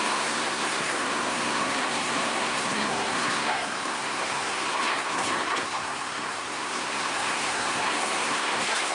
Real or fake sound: fake